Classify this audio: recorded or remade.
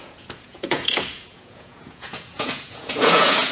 remade